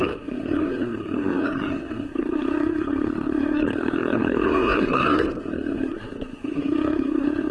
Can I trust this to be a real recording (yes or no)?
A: no